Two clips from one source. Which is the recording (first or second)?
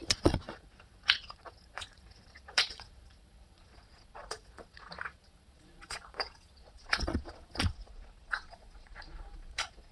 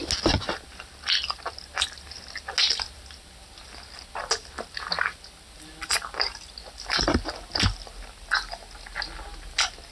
second